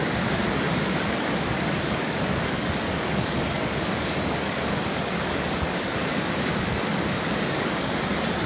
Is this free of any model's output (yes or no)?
no